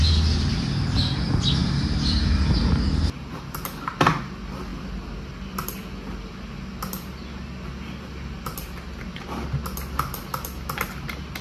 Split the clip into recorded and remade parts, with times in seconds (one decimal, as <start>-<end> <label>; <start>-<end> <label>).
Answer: 0.0-11.4 recorded